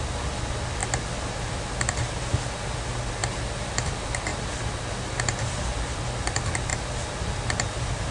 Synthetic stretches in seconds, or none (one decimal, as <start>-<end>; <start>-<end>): none